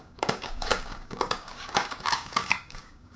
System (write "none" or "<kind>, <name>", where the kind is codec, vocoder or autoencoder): codec, DAC